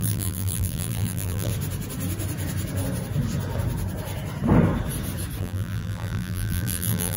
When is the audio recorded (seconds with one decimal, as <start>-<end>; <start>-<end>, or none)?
1.5-5.4